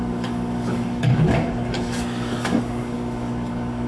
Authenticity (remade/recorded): remade